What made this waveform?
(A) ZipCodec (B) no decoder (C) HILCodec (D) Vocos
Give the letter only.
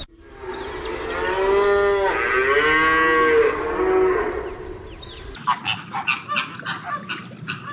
B